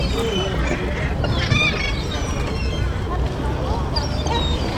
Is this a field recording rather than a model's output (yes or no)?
yes